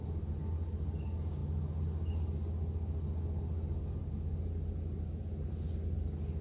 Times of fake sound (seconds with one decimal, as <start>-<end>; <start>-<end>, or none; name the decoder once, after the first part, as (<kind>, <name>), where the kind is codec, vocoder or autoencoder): none